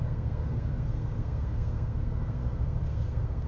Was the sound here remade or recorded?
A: remade